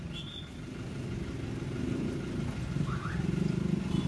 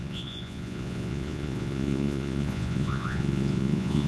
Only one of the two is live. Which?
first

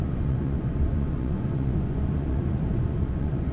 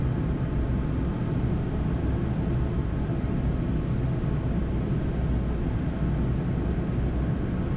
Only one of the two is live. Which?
second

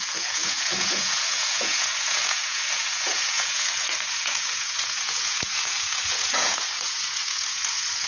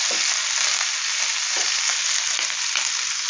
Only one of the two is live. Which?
second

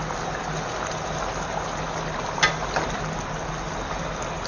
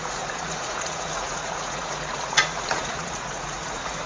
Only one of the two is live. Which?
first